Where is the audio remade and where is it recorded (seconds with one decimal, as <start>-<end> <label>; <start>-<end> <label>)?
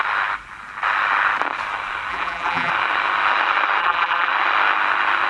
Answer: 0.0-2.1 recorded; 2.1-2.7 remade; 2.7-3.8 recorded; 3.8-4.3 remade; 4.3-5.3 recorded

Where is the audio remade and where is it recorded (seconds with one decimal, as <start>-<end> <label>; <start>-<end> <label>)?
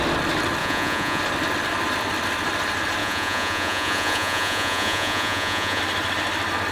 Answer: 0.0-0.6 recorded; 0.6-1.2 remade; 1.2-3.0 recorded; 3.0-5.8 remade; 5.8-6.7 recorded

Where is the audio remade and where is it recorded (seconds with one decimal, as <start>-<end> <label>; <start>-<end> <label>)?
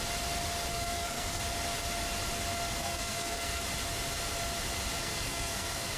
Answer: 0.0-0.7 recorded; 0.7-1.4 remade; 1.4-2.8 recorded; 2.8-3.6 remade; 3.6-5.0 recorded; 5.0-6.0 remade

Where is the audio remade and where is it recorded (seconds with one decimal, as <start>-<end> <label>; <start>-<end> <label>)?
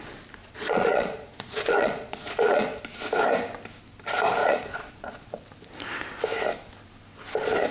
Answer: 0.0-0.4 recorded; 0.4-2.8 remade; 2.8-4.4 recorded; 4.4-5.3 remade; 5.3-7.7 recorded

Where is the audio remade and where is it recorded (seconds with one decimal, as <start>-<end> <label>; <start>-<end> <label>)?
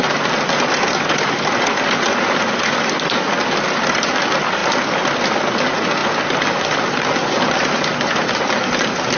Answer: 0.0-9.2 recorded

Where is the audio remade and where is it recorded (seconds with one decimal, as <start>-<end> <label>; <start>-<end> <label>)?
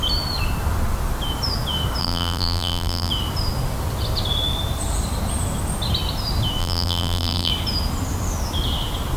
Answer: 0.0-2.0 recorded; 2.0-3.1 remade; 3.1-6.6 recorded; 6.6-7.5 remade; 7.5-9.2 recorded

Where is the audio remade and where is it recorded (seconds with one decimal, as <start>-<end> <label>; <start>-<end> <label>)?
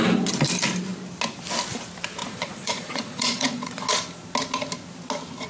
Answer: 0.0-2.2 recorded; 2.2-3.9 remade; 3.9-5.5 recorded